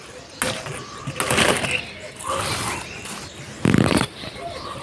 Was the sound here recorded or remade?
recorded